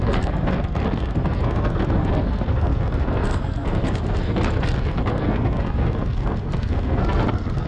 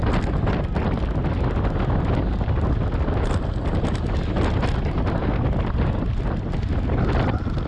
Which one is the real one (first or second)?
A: second